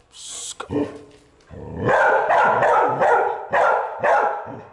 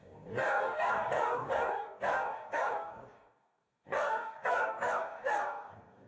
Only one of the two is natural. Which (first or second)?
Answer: first